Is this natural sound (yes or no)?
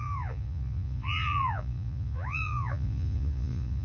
no